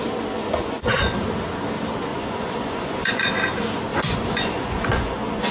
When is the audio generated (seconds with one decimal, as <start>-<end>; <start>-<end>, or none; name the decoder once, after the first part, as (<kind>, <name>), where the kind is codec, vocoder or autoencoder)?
0.4-1.2 (vocoder, Vocos); 2.1-3.3; 3.9-5.5